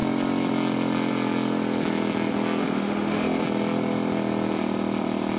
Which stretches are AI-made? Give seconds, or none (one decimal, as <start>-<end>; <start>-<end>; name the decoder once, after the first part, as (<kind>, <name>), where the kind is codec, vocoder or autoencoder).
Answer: 2.6-3.4 (autoencoder, DAC-VAE)